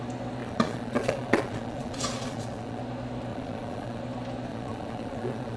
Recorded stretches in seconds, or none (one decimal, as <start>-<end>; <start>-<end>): 0.0-0.4; 2.8-3.3; 4.0-4.5